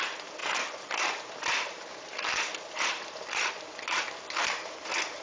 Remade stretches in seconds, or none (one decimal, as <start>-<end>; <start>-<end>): 0.0-5.2